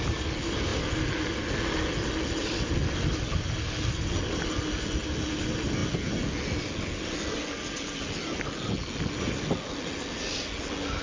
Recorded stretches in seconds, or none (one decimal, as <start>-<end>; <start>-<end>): 0.0-11.0